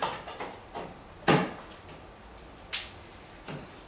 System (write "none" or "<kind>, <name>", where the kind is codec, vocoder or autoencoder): none